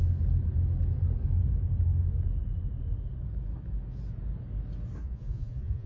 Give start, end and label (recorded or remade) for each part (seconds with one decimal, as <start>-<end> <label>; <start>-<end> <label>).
0.0-5.0 recorded; 5.0-5.9 remade